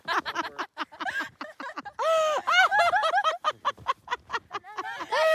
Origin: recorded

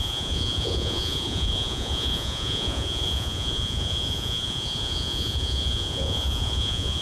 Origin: remade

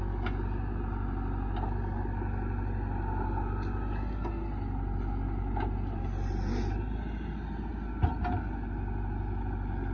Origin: recorded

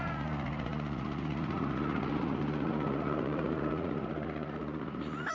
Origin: remade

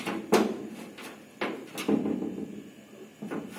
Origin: recorded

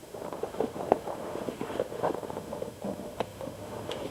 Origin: remade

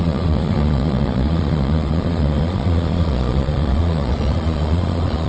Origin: remade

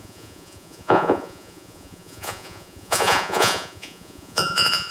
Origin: remade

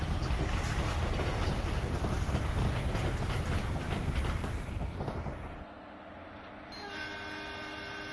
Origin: recorded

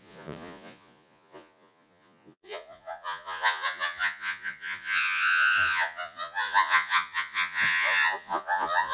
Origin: remade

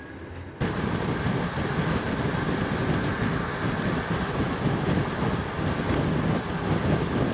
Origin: recorded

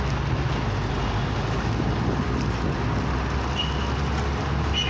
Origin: recorded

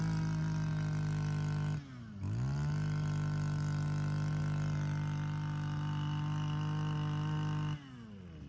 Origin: recorded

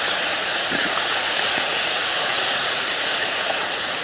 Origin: remade